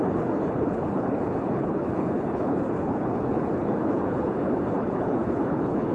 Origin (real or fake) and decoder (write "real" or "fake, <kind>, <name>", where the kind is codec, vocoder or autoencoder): fake, codec, HILCodec